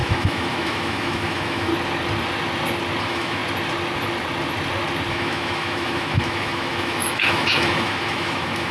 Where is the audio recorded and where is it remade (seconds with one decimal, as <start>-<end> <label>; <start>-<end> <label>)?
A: 0.0-1.7 remade; 1.7-3.0 recorded; 3.0-3.4 remade; 3.4-5.1 recorded; 5.1-8.7 remade